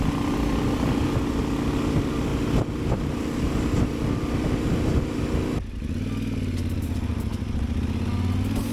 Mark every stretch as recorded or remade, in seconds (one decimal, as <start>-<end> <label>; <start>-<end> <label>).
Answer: 0.0-2.3 recorded; 2.3-3.5 remade; 3.5-7.1 recorded; 7.1-7.8 remade; 7.8-8.7 recorded

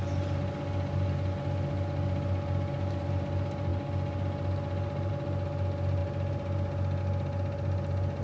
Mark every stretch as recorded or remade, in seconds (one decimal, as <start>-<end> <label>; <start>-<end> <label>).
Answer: 0.0-8.2 recorded

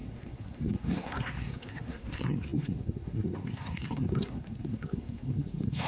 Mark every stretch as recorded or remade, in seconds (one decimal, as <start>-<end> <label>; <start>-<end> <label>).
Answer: 0.0-5.9 remade

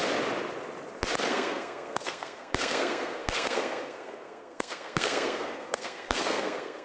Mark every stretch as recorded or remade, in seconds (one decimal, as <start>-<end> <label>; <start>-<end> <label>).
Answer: 0.0-1.3 recorded; 1.3-6.8 remade

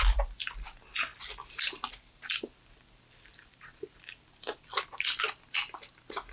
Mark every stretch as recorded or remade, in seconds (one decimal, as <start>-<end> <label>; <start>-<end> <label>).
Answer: 0.0-6.3 recorded

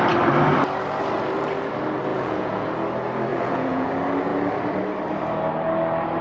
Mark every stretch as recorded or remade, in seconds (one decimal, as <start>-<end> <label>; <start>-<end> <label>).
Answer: 0.0-2.1 recorded; 2.1-2.7 remade; 2.7-3.3 recorded; 3.3-3.9 remade; 3.9-6.2 recorded

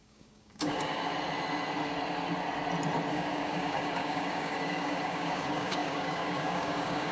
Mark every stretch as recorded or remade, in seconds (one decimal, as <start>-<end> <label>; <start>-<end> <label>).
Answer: 0.0-1.1 remade; 1.1-3.1 recorded; 3.1-7.1 remade

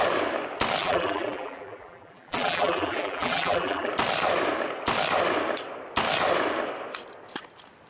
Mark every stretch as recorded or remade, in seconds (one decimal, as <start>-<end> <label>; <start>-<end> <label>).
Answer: 0.0-0.8 recorded; 0.8-3.9 remade; 3.9-7.9 recorded